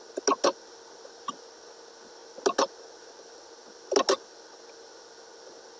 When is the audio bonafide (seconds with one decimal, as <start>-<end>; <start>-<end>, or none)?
0.0-5.8